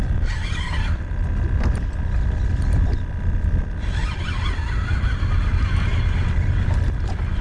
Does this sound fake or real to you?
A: real